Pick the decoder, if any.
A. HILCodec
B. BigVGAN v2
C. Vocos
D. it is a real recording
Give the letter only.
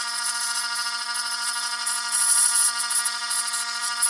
C